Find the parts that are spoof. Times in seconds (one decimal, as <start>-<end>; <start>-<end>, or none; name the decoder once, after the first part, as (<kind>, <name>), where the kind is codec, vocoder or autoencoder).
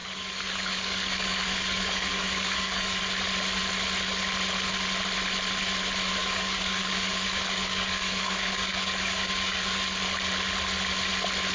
0.0-3.0 (codec, DAC); 6.2-9.8